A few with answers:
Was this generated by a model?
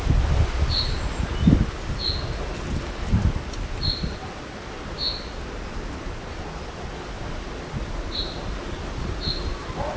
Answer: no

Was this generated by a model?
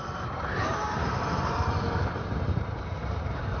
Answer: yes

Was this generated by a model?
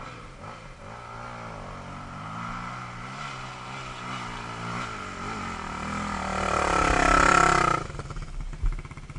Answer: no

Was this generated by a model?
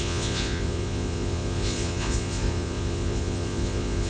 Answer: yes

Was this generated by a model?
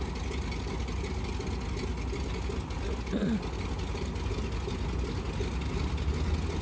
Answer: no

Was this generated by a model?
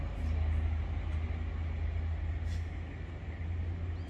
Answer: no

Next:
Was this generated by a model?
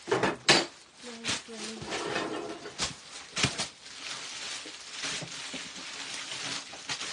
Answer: no